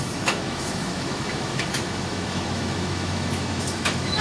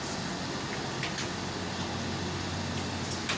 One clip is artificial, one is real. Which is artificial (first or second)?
first